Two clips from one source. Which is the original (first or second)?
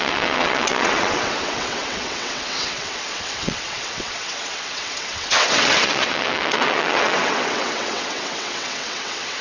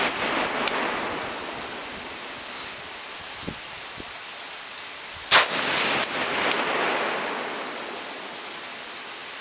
second